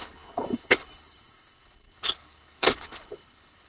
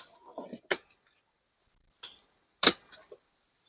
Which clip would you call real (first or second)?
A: second